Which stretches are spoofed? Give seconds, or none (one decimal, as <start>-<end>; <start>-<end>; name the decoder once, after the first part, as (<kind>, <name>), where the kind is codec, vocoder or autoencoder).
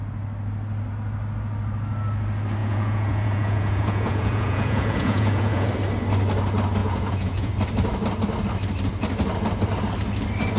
2.6-5.7 (vocoder, Vocos); 6.8-7.5